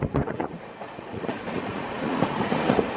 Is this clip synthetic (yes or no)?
yes